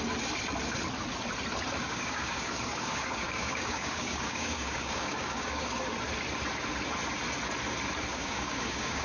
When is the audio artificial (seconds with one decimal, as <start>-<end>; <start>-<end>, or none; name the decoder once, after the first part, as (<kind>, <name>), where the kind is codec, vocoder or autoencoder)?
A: 1.8-5.7 (codec, DAC); 8.1-9.0